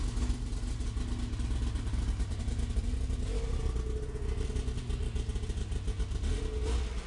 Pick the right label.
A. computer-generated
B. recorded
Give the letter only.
B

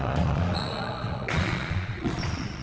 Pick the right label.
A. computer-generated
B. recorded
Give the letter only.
A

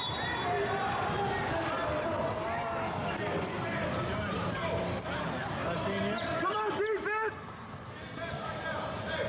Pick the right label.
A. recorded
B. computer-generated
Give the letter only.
A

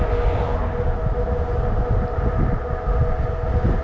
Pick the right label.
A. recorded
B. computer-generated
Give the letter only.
A